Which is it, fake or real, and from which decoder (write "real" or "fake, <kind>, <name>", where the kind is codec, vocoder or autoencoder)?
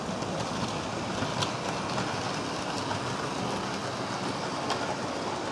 real